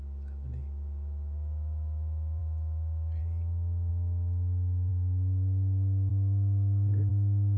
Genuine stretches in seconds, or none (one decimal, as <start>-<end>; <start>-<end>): 0.0-7.6